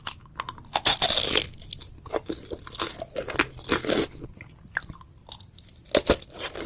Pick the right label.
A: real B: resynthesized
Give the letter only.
A